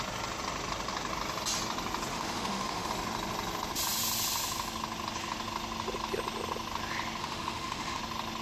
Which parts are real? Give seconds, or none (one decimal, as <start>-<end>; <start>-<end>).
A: 0.0-2.1; 2.9-7.2; 8.0-8.4